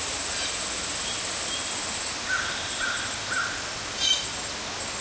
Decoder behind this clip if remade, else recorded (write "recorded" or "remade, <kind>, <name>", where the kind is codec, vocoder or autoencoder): recorded